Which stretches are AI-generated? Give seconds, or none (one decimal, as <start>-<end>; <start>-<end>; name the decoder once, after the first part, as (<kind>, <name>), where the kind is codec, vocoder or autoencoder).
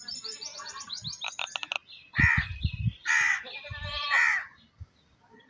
0.5-1.0 (vocoder, Vocos)